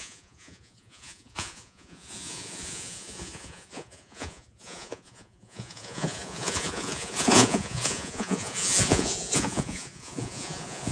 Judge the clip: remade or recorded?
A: remade